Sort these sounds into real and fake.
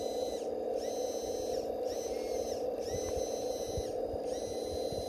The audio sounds real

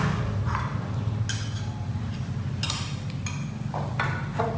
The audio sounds real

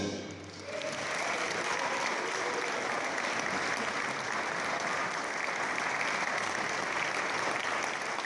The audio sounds real